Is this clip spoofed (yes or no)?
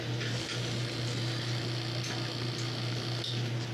no